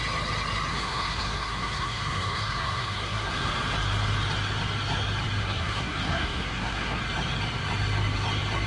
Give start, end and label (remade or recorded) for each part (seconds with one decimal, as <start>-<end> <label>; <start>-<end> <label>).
0.0-0.7 recorded; 0.7-3.5 remade; 3.5-5.4 recorded; 5.4-7.0 remade; 7.0-8.7 recorded